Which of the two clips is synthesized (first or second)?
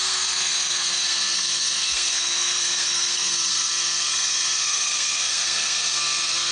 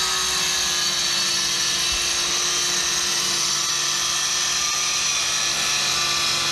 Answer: first